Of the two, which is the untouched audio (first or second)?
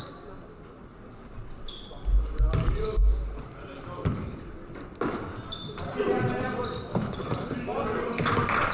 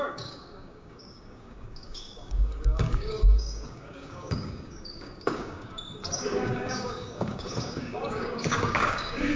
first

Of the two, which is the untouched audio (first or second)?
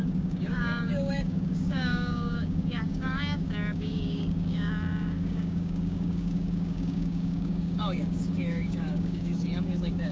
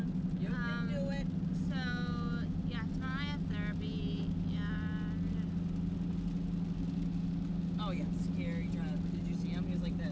second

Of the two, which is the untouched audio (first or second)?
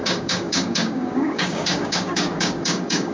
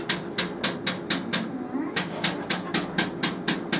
second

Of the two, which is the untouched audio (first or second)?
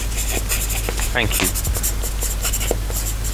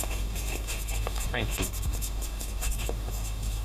first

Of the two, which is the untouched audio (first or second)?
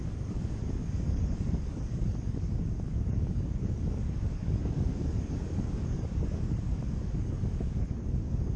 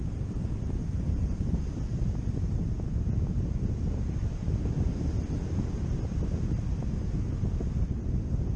second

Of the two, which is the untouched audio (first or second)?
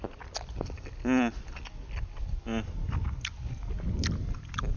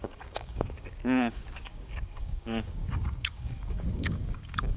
first